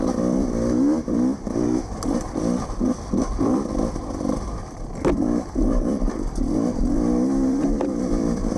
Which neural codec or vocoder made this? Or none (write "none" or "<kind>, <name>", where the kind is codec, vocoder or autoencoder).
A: vocoder, BigVGAN v2